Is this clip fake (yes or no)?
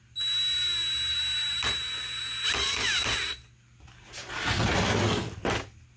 no